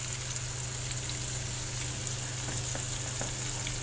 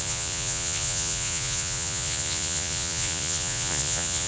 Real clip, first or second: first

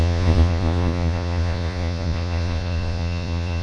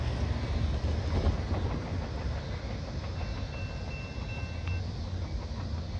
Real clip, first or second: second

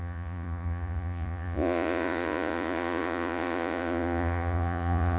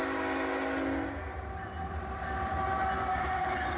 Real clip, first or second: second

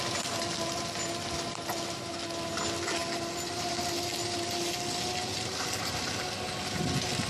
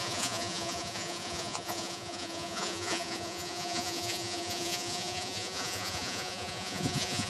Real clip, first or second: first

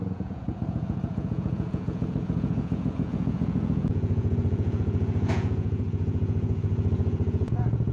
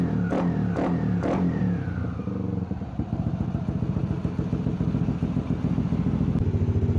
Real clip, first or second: second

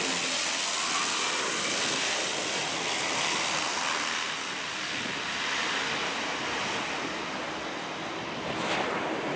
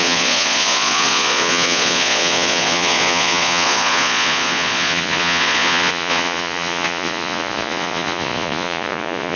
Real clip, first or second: first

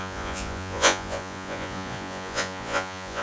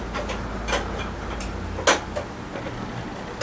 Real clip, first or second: second